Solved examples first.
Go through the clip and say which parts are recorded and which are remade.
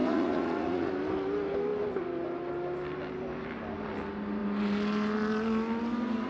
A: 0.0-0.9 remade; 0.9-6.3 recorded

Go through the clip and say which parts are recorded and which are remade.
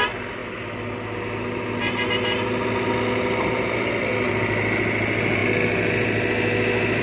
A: 0.0-7.0 recorded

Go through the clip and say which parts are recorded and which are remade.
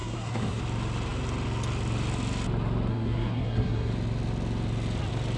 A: 0.0-0.6 remade; 0.6-2.9 recorded; 2.9-3.9 remade; 3.9-5.4 recorded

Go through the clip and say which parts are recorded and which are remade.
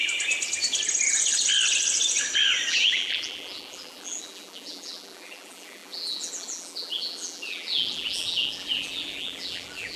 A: 0.0-2.7 recorded; 2.7-10.0 remade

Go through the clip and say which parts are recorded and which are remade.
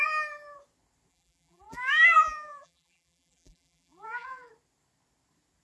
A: 0.0-1.1 recorded; 1.1-4.5 remade; 4.5-5.6 recorded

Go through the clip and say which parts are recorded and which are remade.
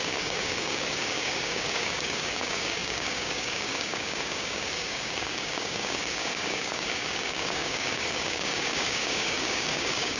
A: 0.0-10.2 remade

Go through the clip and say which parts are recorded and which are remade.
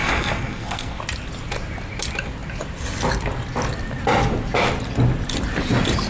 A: 0.0-1.0 remade; 1.0-6.1 recorded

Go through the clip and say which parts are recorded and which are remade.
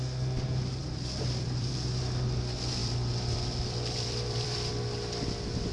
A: 0.0-0.8 recorded; 0.8-1.7 remade; 1.7-2.8 recorded; 2.8-4.7 remade; 4.7-5.7 recorded